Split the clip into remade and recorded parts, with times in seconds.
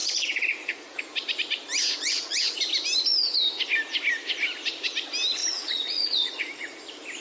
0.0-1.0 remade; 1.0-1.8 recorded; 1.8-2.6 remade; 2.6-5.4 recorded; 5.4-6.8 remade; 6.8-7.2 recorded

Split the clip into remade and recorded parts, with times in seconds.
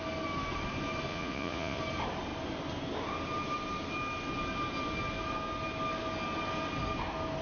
0.0-1.1 recorded; 1.1-1.8 remade; 1.8-7.4 recorded